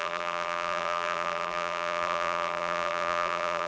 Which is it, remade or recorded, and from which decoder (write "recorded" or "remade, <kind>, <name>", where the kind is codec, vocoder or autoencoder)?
remade, vocoder, BigVGAN v2